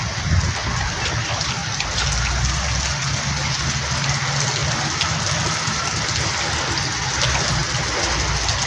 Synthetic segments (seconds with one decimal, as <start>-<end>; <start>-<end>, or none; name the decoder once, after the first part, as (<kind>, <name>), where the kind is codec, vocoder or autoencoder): none